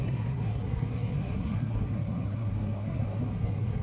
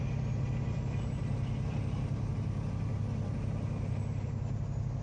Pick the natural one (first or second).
second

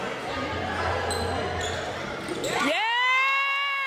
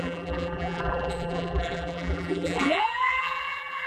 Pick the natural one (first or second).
first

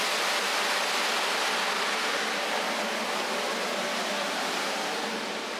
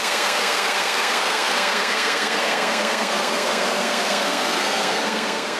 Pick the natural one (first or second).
first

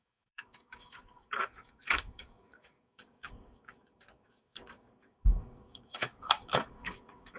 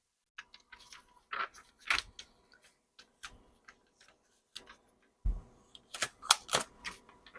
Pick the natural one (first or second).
second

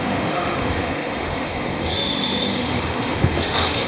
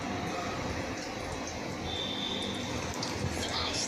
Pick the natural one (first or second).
second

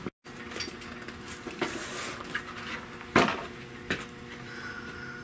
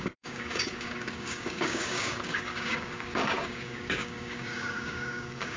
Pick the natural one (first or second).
first